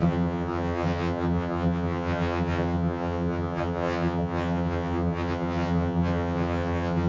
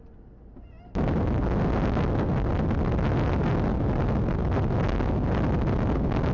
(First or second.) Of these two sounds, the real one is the second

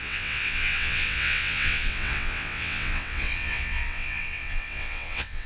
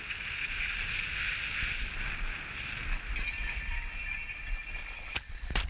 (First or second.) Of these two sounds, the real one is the second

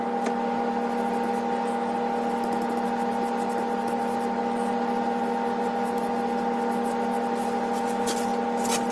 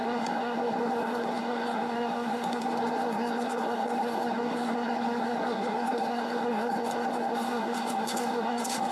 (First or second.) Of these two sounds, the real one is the first